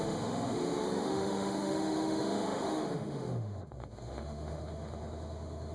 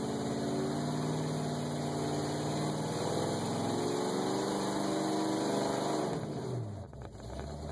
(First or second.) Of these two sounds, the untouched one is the second